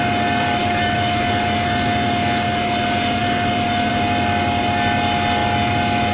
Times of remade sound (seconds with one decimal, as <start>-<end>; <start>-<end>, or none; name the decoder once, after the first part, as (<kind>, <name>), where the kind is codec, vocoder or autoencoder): 0.6-1.2 (autoencoder, DAC-VAE)